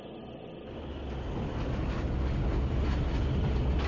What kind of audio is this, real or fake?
real